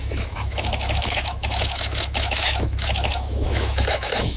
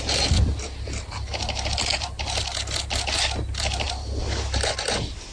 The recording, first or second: second